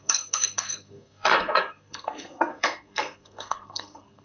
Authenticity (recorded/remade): remade